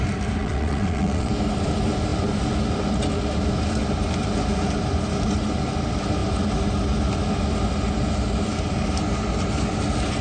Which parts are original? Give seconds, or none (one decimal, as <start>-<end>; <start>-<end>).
0.0-0.4; 1.3-10.2